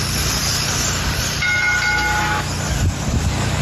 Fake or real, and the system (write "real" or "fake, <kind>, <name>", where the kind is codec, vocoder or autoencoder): real